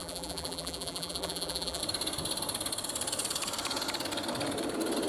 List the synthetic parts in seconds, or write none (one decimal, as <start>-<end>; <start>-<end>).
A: 0.0-1.8